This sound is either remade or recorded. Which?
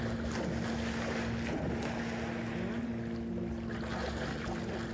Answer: recorded